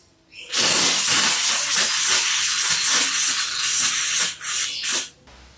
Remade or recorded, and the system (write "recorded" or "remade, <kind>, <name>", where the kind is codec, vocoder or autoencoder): recorded